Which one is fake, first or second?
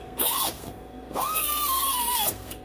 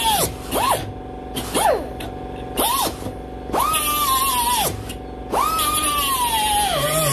first